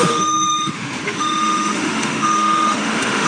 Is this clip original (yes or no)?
no